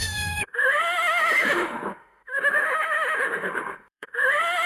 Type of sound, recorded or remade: remade